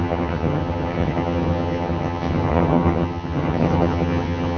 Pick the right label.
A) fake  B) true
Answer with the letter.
A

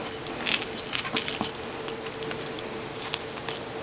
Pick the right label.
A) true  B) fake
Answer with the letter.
A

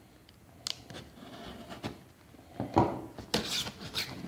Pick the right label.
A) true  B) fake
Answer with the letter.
A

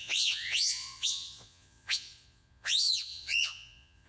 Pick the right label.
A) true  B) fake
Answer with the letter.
B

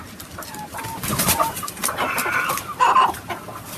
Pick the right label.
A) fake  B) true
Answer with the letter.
B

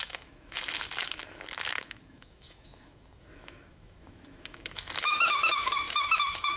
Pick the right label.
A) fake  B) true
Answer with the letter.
A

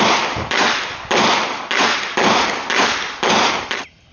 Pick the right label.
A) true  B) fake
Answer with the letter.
A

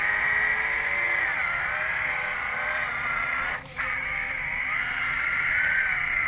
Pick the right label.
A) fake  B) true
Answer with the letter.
B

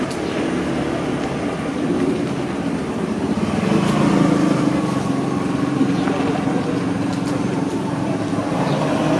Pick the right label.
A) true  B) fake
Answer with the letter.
A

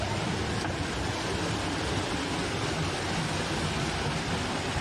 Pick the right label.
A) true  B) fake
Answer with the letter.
A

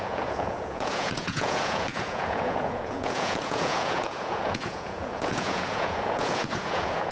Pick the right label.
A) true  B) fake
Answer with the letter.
B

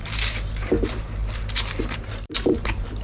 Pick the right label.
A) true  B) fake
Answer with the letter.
B